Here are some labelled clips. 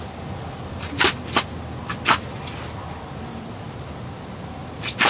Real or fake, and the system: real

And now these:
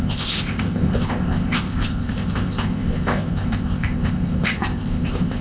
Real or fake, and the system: fake, codec, ZipCodec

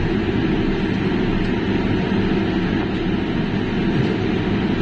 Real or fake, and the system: real